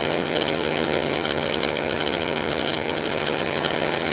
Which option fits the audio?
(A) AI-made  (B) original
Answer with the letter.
A